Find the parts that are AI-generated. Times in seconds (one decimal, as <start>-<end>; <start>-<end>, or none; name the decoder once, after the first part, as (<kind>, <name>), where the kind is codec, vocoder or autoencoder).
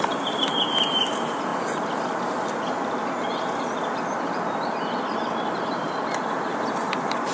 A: 0.0-1.5 (vocoder, BigVGAN v2); 4.2-7.3